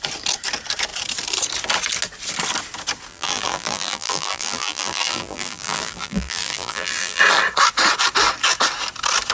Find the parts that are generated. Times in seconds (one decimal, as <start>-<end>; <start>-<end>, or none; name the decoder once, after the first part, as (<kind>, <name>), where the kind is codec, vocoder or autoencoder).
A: 3.1-7.2 (vocoder, BigVGAN v2)